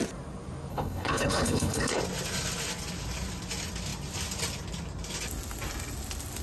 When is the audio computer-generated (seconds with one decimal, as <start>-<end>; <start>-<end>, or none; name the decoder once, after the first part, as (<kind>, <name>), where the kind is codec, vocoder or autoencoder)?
0.7-2.0 (codec, HILCodec)